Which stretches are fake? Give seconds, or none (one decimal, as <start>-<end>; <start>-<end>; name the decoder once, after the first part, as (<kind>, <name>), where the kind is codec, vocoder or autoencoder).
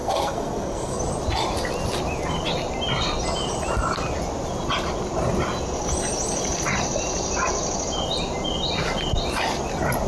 0.0-1.0 (codec, SNAC)